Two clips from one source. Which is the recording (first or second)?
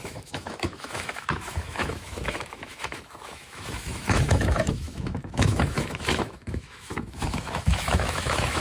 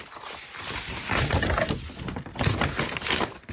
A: second